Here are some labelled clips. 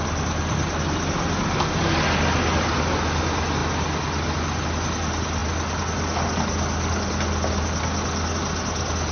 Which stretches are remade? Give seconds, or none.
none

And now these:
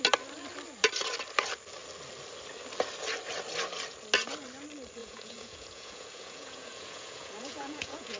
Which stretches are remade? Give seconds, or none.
5.0-8.2 (vocoder, Vocos)

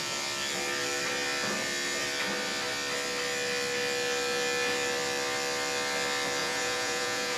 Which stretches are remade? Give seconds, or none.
6.4-7.4 (vocoder, Vocos)